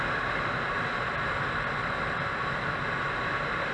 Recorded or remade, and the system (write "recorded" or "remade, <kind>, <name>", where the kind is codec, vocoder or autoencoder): recorded